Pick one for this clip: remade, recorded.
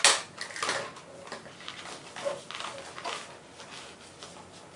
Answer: recorded